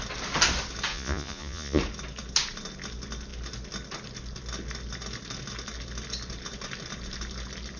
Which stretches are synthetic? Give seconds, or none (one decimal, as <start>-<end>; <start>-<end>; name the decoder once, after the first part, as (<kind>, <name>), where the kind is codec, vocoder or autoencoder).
0.9-1.8 (vocoder, Vocos)